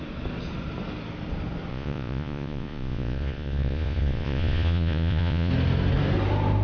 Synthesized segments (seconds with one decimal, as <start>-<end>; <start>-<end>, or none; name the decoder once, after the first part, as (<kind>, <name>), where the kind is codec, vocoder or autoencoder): 1.7-5.5 (vocoder, Vocos)